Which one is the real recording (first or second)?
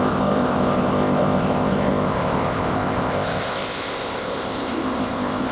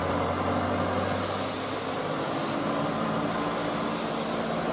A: second